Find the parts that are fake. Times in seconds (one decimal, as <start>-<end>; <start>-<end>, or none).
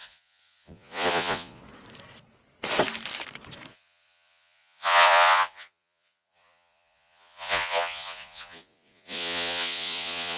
0.0-1.6; 3.7-10.4